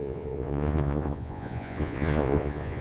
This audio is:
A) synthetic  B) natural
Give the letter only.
A